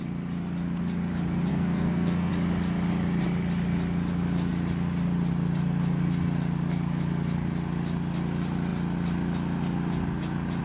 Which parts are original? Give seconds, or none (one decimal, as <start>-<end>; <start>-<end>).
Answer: 0.0-1.5; 2.3-10.6

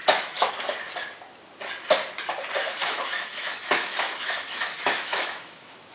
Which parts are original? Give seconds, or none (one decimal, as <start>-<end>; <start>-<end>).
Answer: 0.5-2.8

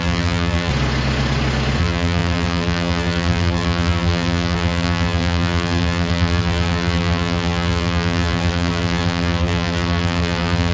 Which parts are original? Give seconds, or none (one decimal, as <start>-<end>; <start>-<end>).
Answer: 0.7-1.8

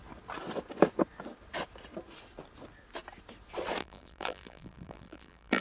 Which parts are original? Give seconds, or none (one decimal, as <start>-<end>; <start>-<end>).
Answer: 0.0-3.8

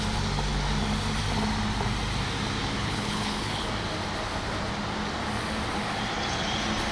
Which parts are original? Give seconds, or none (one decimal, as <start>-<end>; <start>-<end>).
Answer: 0.0-2.8; 3.7-6.9

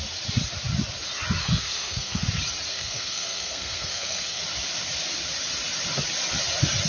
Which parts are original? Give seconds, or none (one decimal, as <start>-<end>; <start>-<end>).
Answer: 0.0-1.4; 2.2-2.7; 4.4-6.9